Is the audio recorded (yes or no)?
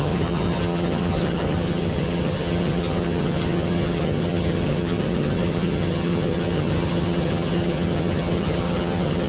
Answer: no